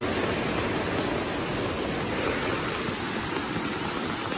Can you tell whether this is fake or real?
real